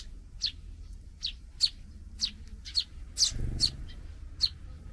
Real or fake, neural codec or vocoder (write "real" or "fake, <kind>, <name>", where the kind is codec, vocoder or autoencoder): real